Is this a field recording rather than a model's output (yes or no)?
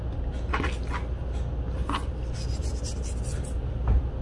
yes